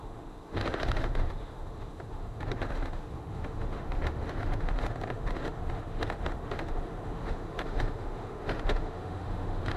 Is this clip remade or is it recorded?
remade